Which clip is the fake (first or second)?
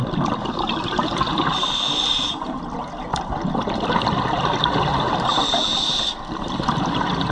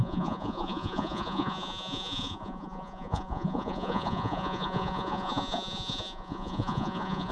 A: second